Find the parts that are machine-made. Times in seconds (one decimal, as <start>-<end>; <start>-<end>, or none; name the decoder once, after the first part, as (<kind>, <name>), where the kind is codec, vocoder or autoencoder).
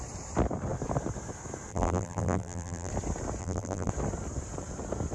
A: 1.7-2.9 (vocoder, BigVGAN v2); 3.4-3.9